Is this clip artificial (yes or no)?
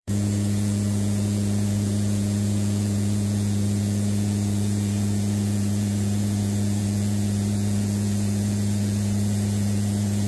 yes